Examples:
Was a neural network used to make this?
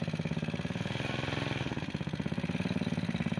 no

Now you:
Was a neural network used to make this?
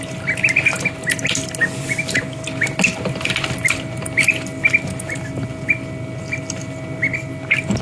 no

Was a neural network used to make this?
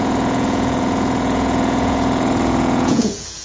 yes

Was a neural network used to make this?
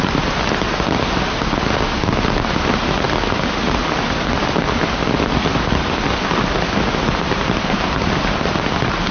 no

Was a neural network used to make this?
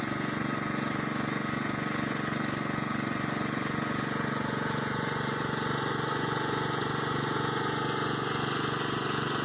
yes